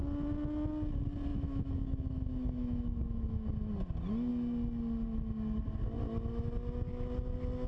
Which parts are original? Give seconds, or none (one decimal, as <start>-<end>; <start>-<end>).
0.0-1.3; 3.7-7.7